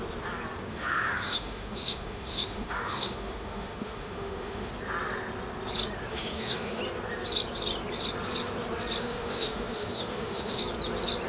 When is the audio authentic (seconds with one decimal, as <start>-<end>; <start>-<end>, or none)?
0.0-0.7; 4.7-6.1; 6.8-9.0; 10.6-11.3